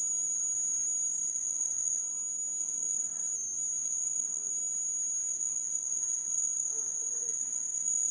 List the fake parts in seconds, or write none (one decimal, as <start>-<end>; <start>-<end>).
1.3-2.0; 2.6-3.2; 3.8-4.5; 5.3-8.1